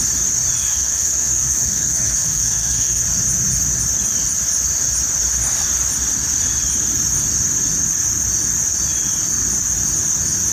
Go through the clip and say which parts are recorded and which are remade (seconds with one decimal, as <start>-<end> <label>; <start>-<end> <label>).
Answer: 0.0-0.6 recorded; 0.6-3.0 remade; 3.0-10.5 recorded